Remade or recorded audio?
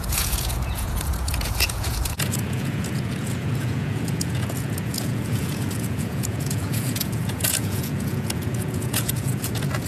remade